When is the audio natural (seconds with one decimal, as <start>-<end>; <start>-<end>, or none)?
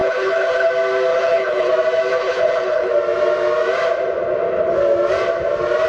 0.7-1.1; 1.7-2.1; 2.9-5.9